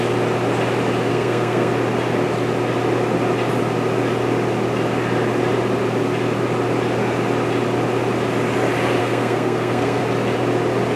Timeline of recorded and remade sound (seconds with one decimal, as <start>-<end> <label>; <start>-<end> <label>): 0.0-1.1 recorded; 1.1-1.7 remade; 1.7-9.0 recorded; 9.0-10.0 remade; 10.0-11.0 recorded